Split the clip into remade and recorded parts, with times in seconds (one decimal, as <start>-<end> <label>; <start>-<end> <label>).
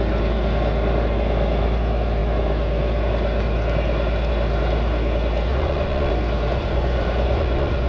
0.0-5.5 recorded; 5.5-6.1 remade; 6.1-6.5 recorded; 6.5-7.9 remade